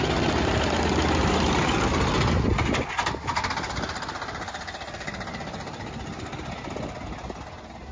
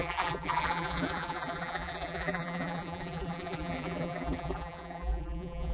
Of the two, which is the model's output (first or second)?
second